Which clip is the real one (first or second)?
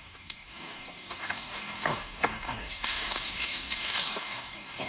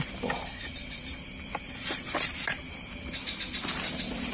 second